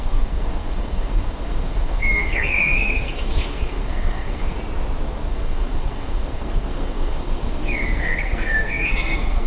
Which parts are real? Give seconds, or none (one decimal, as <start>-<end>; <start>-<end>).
4.6-5.3